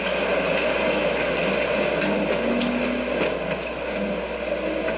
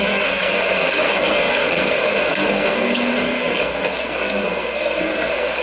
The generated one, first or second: second